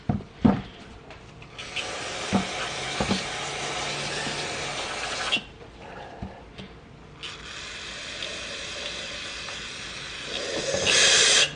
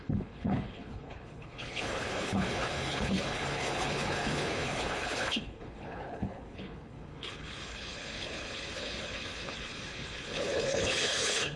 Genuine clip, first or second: first